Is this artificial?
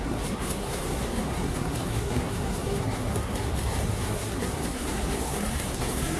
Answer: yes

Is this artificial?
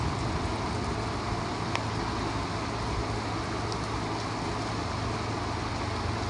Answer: no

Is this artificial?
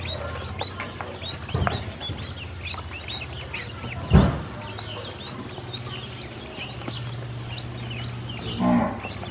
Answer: no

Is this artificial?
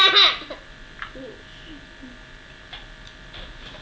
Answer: no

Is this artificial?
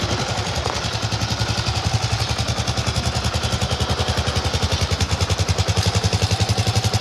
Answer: no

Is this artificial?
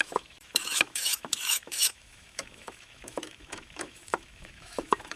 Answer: yes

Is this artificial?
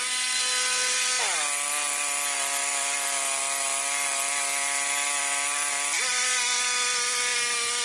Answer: no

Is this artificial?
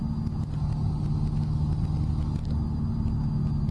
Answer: no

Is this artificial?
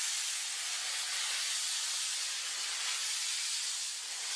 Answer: no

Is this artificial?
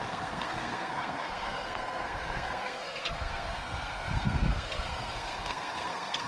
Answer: yes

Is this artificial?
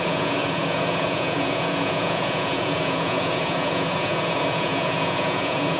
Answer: yes